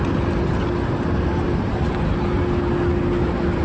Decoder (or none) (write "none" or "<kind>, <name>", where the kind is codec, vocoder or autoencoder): none